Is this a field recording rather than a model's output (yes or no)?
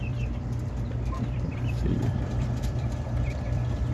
no